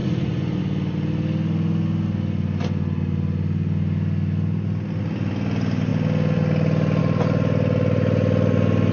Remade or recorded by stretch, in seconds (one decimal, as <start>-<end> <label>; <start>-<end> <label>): 0.0-0.6 remade; 0.6-8.9 recorded